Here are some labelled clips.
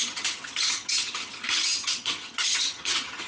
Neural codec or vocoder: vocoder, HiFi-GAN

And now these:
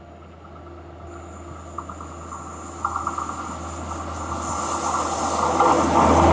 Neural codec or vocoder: none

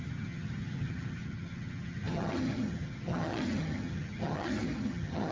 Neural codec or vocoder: vocoder, HiFi-GAN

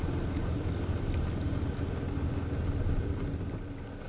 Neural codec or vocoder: none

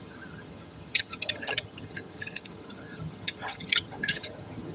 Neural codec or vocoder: vocoder, HiFi-GAN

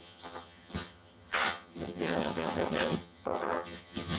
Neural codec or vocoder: vocoder, HiFi-GAN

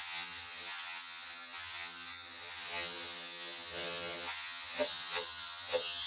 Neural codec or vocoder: vocoder, HiFi-GAN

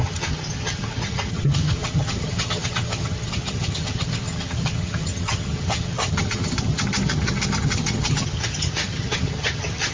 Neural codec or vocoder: vocoder, HiFi-GAN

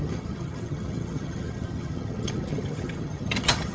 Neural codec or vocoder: vocoder, HiFi-GAN